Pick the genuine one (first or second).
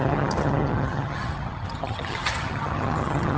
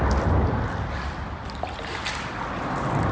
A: second